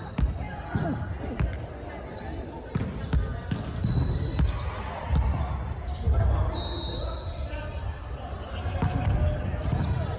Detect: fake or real real